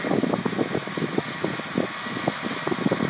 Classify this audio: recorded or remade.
recorded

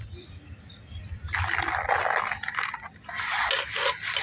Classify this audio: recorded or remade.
recorded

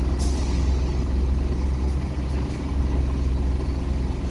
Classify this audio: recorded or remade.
recorded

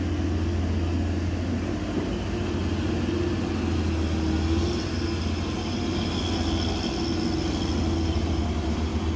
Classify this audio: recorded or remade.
recorded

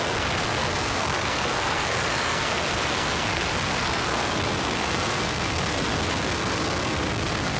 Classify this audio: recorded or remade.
remade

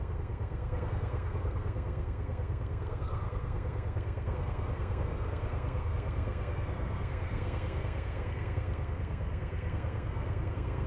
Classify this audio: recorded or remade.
remade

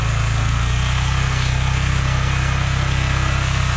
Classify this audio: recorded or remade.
remade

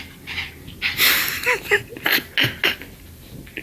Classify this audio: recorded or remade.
recorded